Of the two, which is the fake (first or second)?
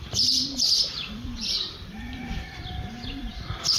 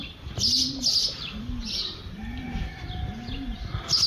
first